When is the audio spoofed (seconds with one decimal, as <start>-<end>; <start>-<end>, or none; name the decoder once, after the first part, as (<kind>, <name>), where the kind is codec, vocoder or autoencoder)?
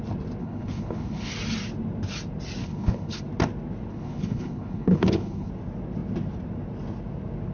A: 0.4-1.3 (codec, HILCodec); 2.6-3.2; 3.9-5.5